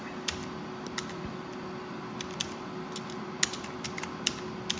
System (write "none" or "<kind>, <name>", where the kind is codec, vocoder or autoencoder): none